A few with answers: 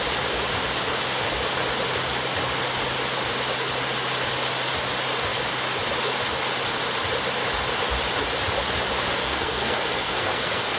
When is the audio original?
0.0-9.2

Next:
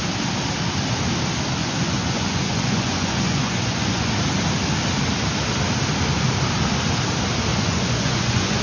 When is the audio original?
0.0-1.6; 4.1-7.5